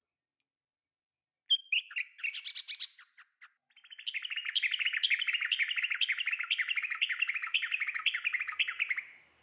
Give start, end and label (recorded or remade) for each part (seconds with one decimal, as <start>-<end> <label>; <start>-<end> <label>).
0.0-9.4 recorded

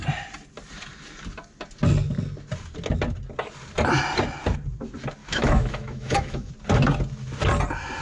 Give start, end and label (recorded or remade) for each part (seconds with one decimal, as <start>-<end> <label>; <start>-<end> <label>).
0.0-5.2 recorded; 5.2-6.5 remade; 6.5-8.0 recorded

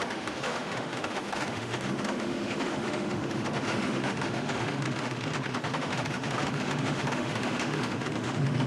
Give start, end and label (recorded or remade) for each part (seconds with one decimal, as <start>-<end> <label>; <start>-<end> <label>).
0.0-8.7 remade

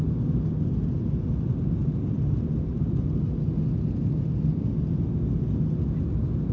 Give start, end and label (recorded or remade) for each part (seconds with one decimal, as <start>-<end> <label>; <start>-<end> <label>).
0.0-6.5 recorded

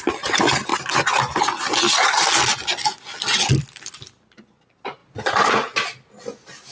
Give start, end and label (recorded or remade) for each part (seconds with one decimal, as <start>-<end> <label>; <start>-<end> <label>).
0.0-6.7 recorded

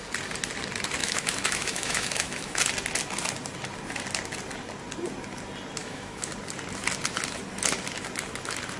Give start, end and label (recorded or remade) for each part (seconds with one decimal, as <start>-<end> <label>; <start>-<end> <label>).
0.0-1.0 recorded; 1.0-2.6 remade; 2.6-5.8 recorded; 5.8-6.3 remade; 6.3-8.8 recorded